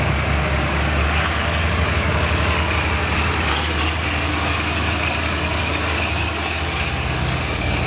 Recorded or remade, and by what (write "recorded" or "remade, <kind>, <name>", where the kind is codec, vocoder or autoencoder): remade, codec, DAC